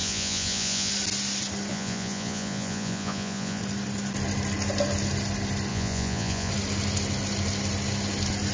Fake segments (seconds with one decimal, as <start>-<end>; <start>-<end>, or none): 0.0-0.9; 1.7-3.6; 5.7-6.5